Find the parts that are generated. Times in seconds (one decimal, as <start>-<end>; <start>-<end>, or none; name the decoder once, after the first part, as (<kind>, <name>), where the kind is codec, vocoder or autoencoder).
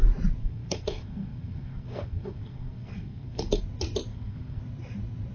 0.4-3.6 (codec, SNAC); 4.1-4.6